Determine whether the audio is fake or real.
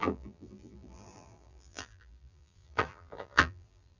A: fake